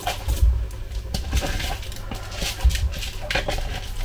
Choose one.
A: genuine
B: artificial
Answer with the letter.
A